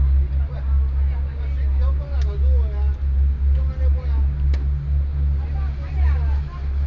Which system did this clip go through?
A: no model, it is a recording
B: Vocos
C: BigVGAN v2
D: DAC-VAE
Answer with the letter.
A